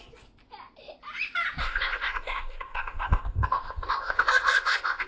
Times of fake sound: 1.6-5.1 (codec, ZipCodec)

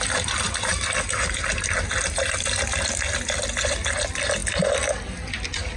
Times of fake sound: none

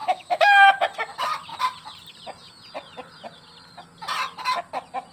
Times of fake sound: 0.0-0.7 (autoencoder, DAC-VAE)

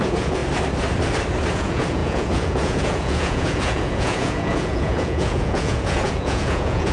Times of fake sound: 0.0-0.4 (vocoder, Vocos); 1.5-6.9